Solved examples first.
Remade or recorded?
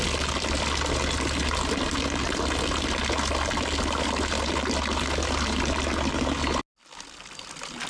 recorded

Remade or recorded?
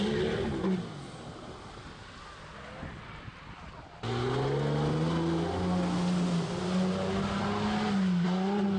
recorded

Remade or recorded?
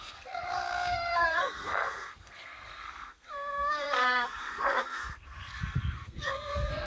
remade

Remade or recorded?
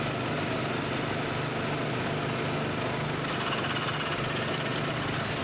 recorded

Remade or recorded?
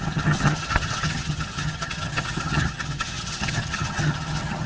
remade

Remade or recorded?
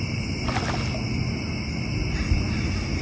recorded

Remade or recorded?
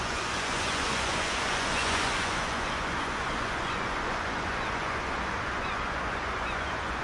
remade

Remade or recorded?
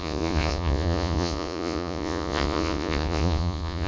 remade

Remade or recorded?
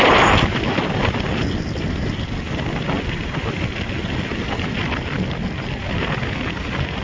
recorded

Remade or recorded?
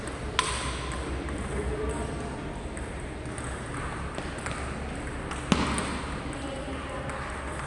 recorded